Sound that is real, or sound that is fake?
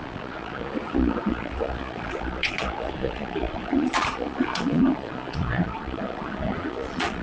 fake